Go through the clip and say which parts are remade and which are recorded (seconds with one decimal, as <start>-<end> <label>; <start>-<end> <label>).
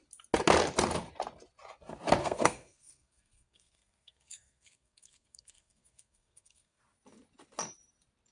0.0-2.2 recorded; 2.2-6.8 remade; 6.8-8.3 recorded